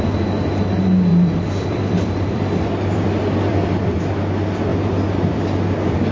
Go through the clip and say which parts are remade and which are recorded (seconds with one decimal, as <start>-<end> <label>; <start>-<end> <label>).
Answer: 0.0-1.1 recorded; 1.1-4.0 remade; 4.0-4.7 recorded; 4.7-5.4 remade; 5.4-6.1 recorded